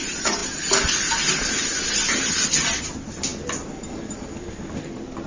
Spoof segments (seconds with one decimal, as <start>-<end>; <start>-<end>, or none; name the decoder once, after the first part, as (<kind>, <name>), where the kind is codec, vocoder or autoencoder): none